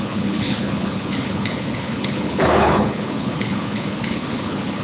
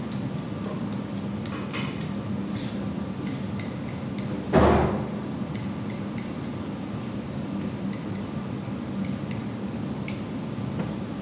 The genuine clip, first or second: second